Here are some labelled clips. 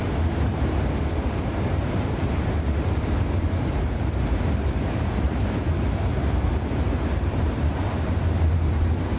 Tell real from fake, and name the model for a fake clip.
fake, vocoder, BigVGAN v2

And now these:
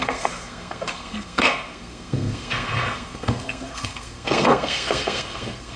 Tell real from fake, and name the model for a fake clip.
fake, codec, SNAC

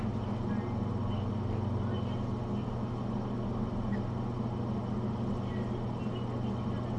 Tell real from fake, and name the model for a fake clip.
real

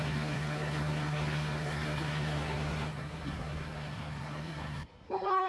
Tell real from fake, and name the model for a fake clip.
fake, codec, SNAC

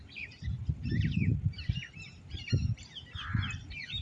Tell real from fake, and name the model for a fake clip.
real